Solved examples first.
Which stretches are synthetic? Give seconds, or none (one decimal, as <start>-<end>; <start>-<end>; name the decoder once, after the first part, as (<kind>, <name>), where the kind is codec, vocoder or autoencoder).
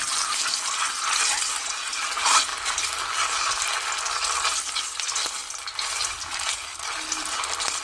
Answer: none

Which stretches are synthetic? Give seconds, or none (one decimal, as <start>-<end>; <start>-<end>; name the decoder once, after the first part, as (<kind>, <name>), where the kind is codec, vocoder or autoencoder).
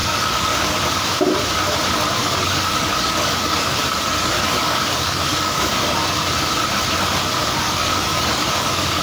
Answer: 0.0-0.8 (codec, DAC); 2.2-6.0; 7.4-9.0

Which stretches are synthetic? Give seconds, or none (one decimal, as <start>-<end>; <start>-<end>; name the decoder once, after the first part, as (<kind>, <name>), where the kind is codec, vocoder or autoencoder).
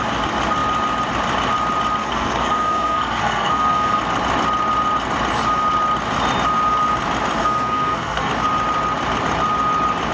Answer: 2.0-4.0 (codec, SNAC); 7.4-8.3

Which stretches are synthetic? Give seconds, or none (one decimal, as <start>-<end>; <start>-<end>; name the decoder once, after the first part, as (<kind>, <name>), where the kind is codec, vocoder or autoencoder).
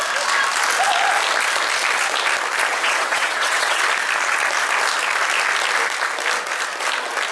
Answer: 2.7-3.8 (vocoder, WaveNeXt)